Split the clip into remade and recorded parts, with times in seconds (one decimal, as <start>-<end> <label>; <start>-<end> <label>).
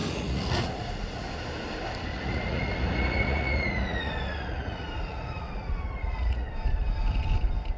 0.0-1.3 remade; 1.3-2.1 recorded; 2.1-6.5 remade; 6.5-7.8 recorded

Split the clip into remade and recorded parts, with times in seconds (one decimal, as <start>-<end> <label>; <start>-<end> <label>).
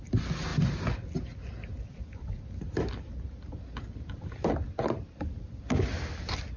0.0-6.6 recorded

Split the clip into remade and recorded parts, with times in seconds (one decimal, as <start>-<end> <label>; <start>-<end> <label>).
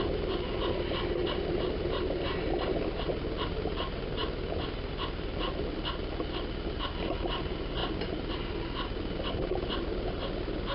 0.0-10.7 recorded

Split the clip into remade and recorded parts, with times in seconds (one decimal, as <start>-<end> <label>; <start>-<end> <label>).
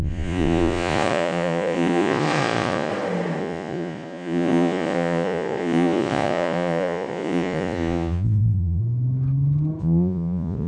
0.0-2.9 remade; 2.9-3.4 recorded; 3.4-8.8 remade; 8.8-9.8 recorded; 9.8-10.7 remade